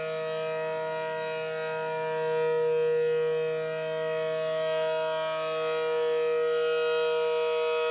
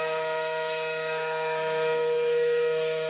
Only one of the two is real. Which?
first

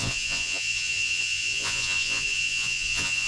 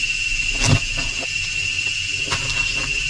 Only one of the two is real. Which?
second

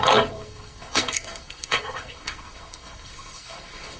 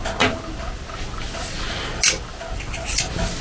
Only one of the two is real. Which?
second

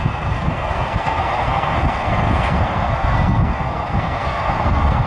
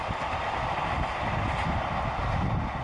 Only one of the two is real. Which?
second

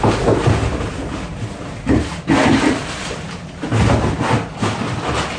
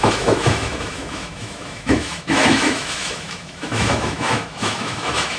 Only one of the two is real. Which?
first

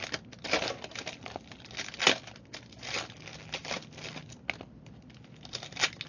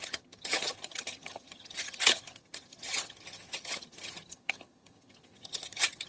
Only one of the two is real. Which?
first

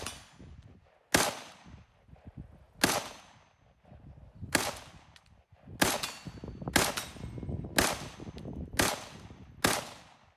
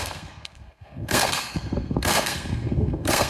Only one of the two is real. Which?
first